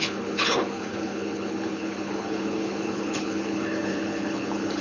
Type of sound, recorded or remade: remade